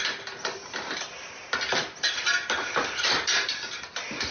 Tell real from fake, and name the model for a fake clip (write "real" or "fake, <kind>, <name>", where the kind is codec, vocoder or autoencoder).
real